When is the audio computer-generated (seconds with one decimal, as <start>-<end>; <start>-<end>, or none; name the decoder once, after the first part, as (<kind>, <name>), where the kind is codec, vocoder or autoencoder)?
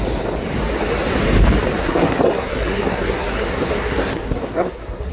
1.8-5.1 (codec, SNAC)